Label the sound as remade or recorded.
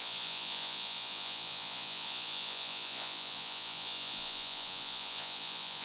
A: remade